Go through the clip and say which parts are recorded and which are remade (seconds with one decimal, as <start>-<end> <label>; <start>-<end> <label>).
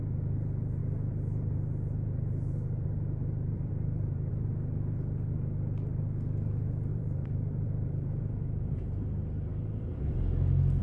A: 0.0-0.8 recorded; 0.8-4.3 remade; 4.3-6.9 recorded; 6.9-9.0 remade; 9.0-10.8 recorded